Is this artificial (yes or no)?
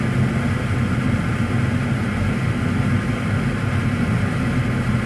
no